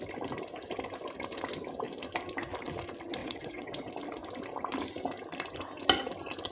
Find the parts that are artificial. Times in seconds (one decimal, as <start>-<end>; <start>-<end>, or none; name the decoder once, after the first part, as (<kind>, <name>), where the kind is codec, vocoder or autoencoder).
3.2-3.9 (vocoder, WaveNeXt)